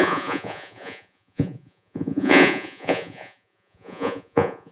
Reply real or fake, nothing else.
fake